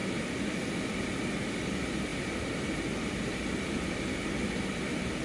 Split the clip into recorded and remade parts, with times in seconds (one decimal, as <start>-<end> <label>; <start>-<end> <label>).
0.0-5.2 recorded